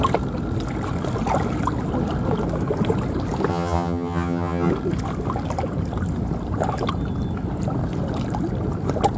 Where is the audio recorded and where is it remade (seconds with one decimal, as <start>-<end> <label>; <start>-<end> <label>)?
0.0-3.5 recorded; 3.5-4.7 remade; 4.7-9.2 recorded